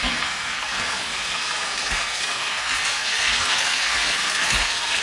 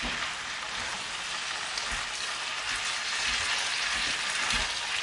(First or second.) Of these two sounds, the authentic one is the second